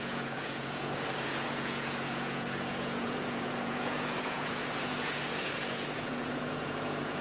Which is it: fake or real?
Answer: fake